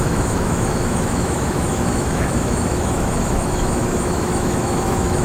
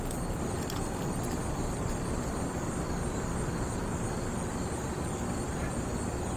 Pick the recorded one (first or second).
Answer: second